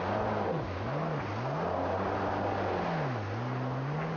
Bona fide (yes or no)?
yes